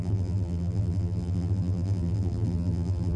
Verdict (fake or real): fake